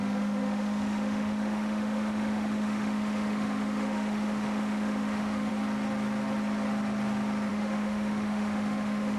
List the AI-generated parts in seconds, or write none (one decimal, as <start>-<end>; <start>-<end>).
0.0-5.5; 7.5-9.2